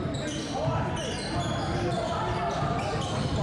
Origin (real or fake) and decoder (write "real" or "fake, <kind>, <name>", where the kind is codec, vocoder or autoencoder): real